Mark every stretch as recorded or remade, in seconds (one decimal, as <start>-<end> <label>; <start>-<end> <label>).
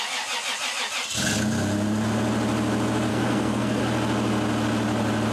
0.0-3.1 recorded; 3.1-3.8 remade; 3.8-5.3 recorded